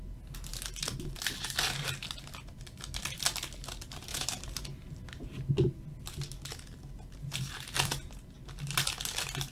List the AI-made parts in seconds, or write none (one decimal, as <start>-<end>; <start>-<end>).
4.1-5.5